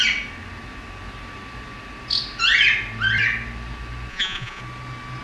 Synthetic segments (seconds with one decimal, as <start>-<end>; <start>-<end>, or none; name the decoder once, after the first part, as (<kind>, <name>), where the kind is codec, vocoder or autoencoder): 4.1-4.6 (vocoder, Vocos)